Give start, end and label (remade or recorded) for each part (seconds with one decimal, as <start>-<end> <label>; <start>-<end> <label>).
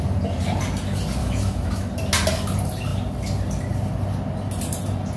0.0-1.2 recorded; 1.2-1.9 remade; 1.9-5.2 recorded